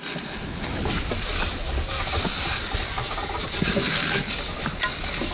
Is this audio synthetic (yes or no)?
no